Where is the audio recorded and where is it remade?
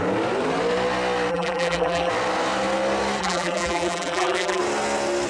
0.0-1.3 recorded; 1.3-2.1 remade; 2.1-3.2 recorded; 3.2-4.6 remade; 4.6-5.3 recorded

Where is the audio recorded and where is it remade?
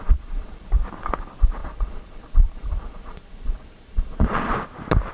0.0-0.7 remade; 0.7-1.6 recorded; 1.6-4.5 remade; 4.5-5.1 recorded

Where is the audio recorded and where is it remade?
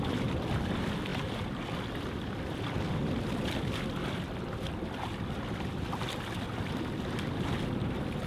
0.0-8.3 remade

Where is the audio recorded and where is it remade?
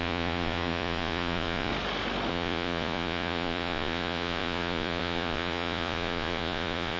0.0-1.7 remade; 1.7-2.3 recorded; 2.3-7.0 remade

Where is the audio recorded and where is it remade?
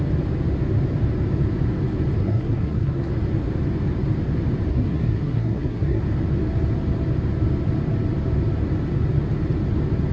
0.0-2.2 recorded; 2.2-3.1 remade; 3.1-4.7 recorded; 4.7-6.0 remade; 6.0-10.1 recorded